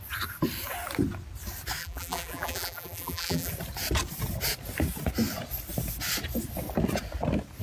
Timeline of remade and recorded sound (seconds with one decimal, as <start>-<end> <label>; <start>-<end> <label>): 0.0-1.8 recorded; 1.8-3.5 remade; 3.5-7.6 recorded